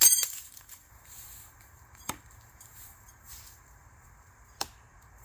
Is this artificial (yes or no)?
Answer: yes